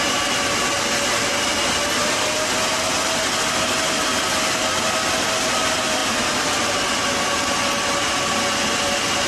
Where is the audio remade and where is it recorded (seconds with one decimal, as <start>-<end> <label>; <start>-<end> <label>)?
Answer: 0.0-9.3 recorded